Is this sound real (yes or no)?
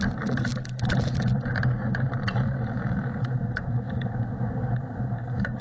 no